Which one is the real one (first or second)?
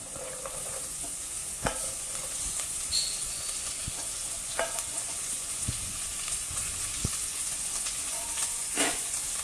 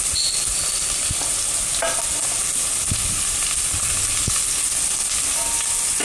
second